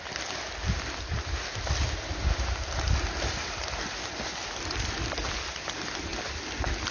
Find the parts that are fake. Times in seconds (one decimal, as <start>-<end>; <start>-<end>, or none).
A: none